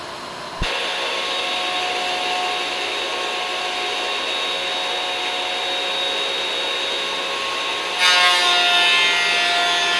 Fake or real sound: real